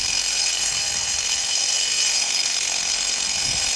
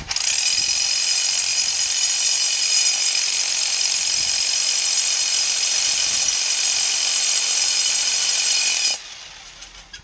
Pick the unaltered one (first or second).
second